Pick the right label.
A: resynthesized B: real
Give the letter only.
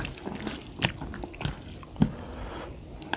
B